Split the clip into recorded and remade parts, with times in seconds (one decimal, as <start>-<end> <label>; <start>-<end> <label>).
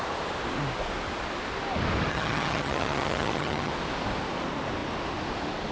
0.0-2.1 recorded; 2.1-3.7 remade; 3.7-5.7 recorded